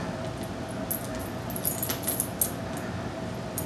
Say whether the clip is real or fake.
real